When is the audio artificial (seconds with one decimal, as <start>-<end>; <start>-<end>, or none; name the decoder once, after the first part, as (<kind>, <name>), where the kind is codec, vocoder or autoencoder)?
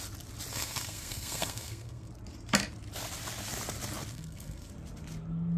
0.5-2.1 (codec, SNAC); 4.1-4.7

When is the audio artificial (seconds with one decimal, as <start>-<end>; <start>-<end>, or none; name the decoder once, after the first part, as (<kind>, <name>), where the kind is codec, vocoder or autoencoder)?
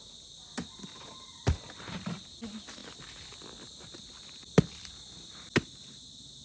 none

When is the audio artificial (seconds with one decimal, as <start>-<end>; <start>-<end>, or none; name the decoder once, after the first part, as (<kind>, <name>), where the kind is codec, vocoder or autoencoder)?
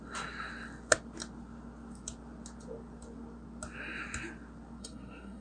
4.8-5.4 (codec, SNAC)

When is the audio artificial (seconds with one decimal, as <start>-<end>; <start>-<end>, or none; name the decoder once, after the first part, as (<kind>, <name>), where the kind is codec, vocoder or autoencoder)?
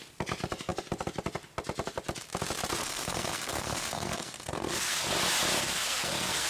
2.8-5.1 (codec, SNAC); 5.6-6.5